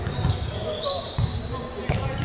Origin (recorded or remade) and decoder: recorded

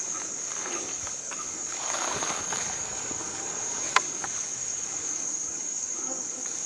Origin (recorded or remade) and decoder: remade, codec, DAC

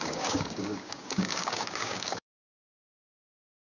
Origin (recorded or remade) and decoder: remade, codec, DAC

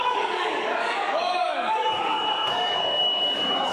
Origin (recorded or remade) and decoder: remade, codec, DAC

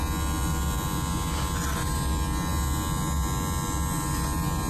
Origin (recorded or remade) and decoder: recorded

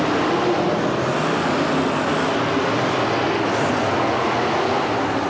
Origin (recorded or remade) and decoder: recorded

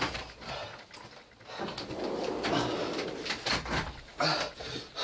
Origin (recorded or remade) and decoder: recorded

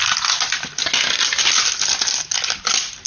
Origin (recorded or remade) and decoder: recorded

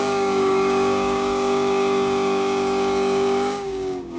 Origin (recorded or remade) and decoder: remade, codec, DAC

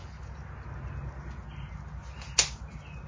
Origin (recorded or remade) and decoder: recorded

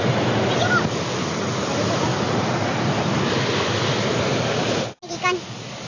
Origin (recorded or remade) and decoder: recorded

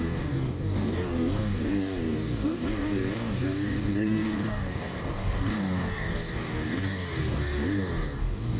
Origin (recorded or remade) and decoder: remade, codec, DAC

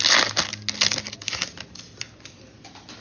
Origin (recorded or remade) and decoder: recorded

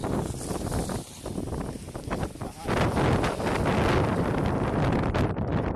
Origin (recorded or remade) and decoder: recorded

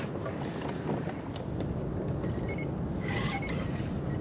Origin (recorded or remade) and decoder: recorded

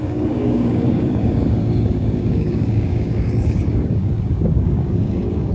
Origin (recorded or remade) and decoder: remade, codec, DAC